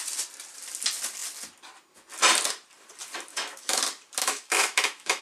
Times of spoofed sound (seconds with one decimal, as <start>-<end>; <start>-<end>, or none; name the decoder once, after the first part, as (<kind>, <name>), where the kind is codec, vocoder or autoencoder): 3.3-3.8 (autoencoder, DAC-VAE); 4.2-5.2